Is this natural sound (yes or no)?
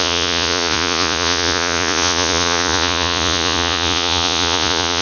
no